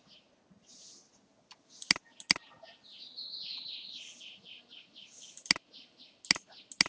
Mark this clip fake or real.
real